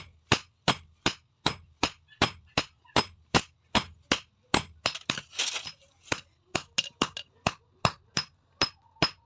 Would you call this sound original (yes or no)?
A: yes